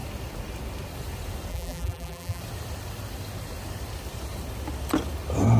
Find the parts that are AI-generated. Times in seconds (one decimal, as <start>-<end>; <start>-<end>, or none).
1.5-2.4